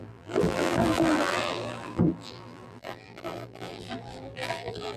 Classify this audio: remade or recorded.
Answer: remade